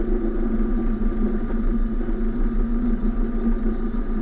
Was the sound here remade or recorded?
recorded